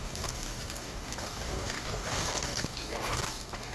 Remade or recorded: remade